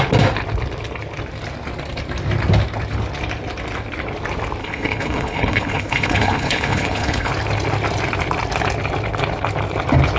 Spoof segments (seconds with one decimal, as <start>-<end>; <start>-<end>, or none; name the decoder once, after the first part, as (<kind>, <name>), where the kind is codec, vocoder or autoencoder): 4.6-7.3 (codec, HILCodec)